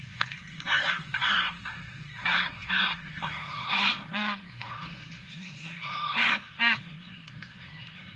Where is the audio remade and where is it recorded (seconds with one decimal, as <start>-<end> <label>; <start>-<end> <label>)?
0.0-8.2 remade